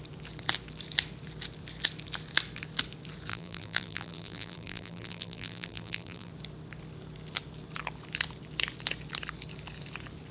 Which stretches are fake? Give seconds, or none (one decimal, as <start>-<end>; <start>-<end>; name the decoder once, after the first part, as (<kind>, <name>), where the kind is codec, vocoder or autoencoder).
3.3-6.3 (vocoder, BigVGAN v2)